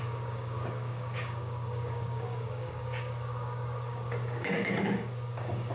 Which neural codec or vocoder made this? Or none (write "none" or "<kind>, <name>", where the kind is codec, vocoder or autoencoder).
codec, DAC